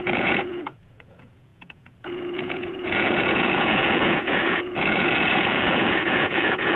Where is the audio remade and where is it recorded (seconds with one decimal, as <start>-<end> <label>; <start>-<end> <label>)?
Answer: 0.0-6.8 remade